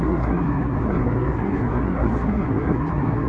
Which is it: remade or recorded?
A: remade